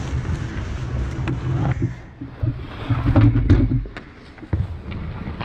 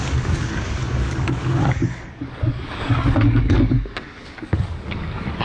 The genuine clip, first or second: first